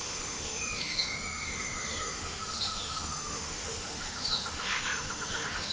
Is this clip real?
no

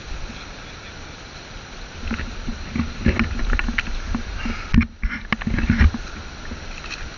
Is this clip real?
yes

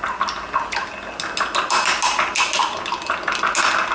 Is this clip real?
yes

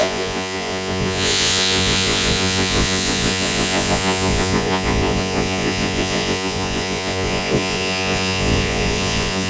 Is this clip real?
no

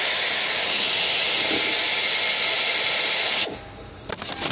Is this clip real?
yes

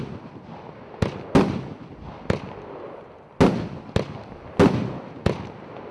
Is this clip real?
yes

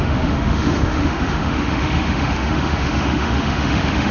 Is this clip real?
no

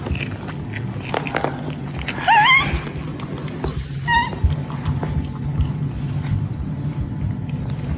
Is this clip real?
yes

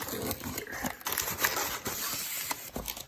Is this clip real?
yes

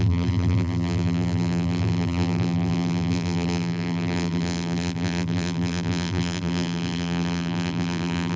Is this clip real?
no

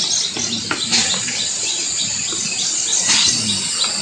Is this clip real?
yes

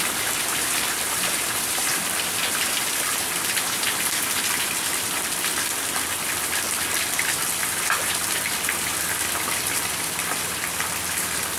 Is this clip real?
no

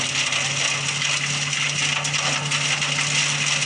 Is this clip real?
yes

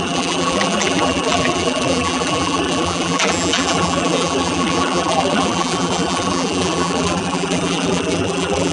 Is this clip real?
no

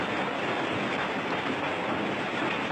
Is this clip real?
yes